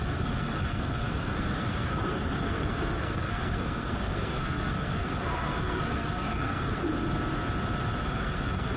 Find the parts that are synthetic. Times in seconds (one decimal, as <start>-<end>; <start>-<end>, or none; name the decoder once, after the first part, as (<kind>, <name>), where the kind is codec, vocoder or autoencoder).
0.0-6.8 (codec, SNAC); 8.0-8.8